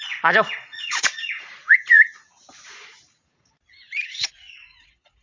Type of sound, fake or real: fake